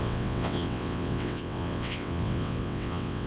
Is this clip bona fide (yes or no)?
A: no